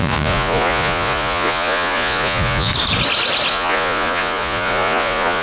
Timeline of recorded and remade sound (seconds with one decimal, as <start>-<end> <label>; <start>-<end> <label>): 0.0-2.7 remade; 2.7-3.5 recorded; 3.5-5.4 remade